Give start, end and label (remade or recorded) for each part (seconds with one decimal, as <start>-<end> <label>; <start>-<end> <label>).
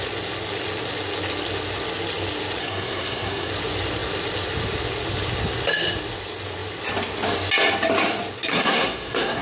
0.0-2.6 recorded; 2.6-3.5 remade; 3.5-8.5 recorded; 8.5-9.4 remade